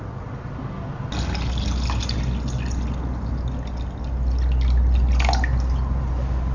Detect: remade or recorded recorded